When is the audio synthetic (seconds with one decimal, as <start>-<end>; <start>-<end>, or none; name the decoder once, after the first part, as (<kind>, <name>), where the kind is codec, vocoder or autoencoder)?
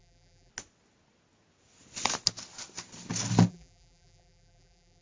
0.0-0.5 (vocoder, BigVGAN v2); 3.5-5.0